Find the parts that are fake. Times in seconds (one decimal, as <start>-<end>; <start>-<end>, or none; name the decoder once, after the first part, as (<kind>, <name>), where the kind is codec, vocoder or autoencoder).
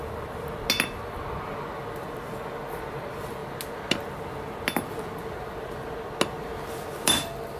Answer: none